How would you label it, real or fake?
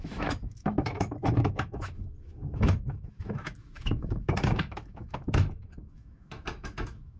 fake